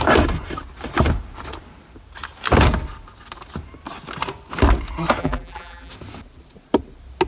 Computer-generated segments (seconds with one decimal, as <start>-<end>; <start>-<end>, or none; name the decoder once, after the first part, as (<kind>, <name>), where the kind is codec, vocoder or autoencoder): 5.2-5.9 (vocoder, BigVGAN v2)